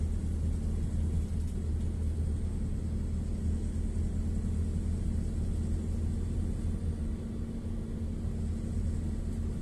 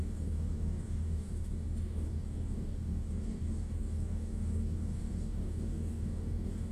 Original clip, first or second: first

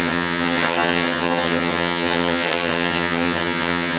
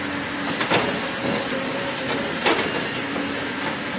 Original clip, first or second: second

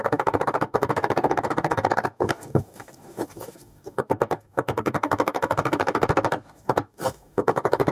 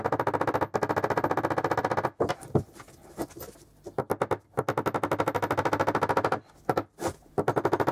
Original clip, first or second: second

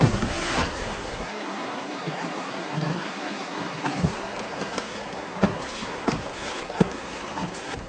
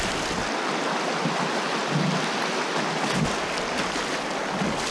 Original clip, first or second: second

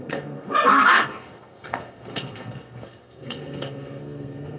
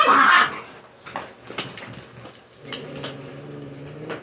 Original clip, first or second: second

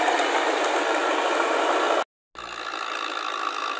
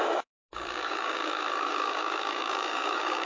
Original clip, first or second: first